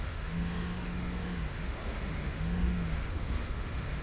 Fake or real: fake